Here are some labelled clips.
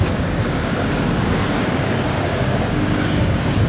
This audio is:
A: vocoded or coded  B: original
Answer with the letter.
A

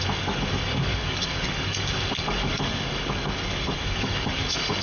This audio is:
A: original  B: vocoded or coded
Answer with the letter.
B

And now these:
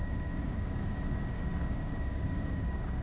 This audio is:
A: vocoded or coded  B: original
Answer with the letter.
A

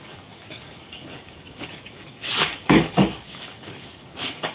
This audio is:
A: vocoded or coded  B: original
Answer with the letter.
A